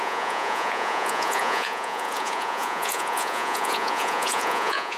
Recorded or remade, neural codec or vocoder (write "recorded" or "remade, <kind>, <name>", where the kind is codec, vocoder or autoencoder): remade, vocoder, Vocos